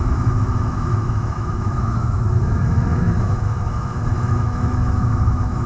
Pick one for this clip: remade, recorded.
remade